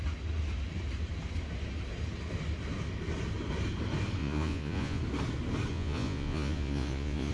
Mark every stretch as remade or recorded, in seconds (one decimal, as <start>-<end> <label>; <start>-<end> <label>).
0.0-4.2 recorded; 4.2-5.0 remade; 5.0-5.7 recorded; 5.7-7.3 remade

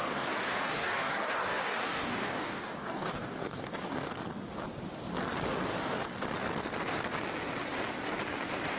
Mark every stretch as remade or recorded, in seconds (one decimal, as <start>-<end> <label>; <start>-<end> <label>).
0.0-4.1 remade; 4.1-8.8 recorded